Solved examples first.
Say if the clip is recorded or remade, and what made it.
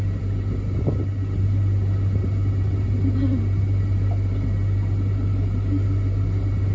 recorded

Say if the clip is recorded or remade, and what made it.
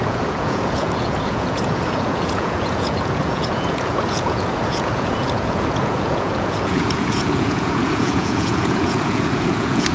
remade, vocoder, Vocos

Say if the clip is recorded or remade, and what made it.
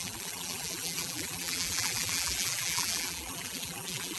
remade, vocoder, BigVGAN v2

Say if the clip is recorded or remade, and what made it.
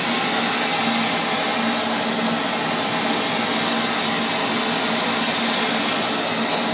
recorded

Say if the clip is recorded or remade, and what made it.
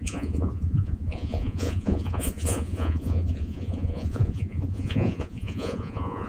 remade, vocoder, Vocos